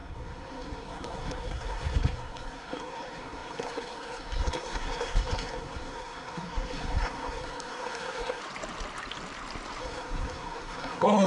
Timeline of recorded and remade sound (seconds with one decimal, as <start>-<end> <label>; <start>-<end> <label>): 0.0-8.4 remade; 8.4-9.8 recorded; 9.8-11.3 remade